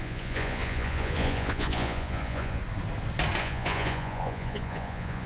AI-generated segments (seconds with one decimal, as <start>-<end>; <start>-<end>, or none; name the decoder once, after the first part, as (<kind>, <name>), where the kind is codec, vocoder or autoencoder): 0.0-2.6 (vocoder, Vocos); 3.4-5.3